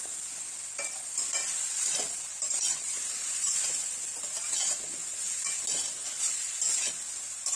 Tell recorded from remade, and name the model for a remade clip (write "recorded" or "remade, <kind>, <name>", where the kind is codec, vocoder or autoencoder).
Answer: recorded